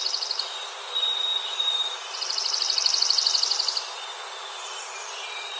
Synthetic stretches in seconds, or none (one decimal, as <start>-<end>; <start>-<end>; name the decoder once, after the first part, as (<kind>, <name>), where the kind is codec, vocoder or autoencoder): 0.0-5.6 (vocoder, BigVGAN v2)